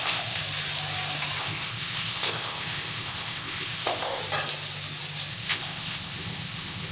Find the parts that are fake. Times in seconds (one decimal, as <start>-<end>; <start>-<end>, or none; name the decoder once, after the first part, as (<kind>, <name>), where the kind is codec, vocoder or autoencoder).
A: 0.0-0.4 (codec, ZipCodec); 1.4-4.2; 5.3-6.9